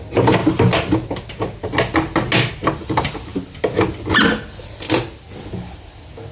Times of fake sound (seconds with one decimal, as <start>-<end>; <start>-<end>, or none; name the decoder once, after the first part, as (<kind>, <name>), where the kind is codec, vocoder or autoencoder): none